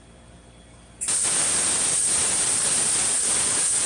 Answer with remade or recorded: recorded